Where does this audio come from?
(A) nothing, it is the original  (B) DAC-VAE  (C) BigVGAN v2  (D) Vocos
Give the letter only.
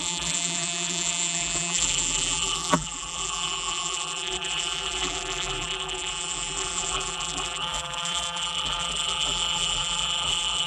C